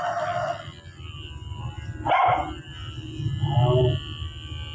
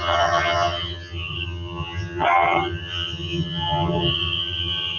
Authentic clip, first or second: first